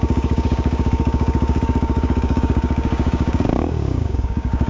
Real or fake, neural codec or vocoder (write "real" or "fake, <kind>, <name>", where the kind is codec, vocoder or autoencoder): fake, codec, DAC